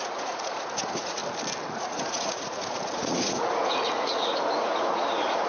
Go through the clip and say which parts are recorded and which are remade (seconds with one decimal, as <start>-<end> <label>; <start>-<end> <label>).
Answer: 0.0-1.2 remade; 1.2-1.8 recorded; 1.8-5.5 remade